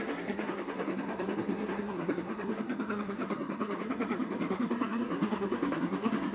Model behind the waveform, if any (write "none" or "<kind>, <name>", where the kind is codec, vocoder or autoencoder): codec, SNAC